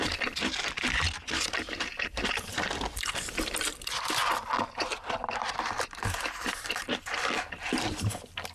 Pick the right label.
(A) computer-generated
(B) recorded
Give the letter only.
A